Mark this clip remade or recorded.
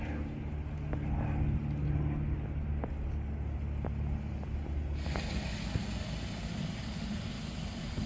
recorded